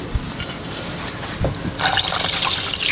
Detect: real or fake real